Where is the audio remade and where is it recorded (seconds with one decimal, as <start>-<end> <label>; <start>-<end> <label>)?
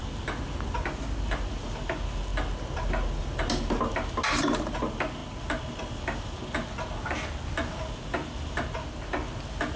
0.0-9.8 recorded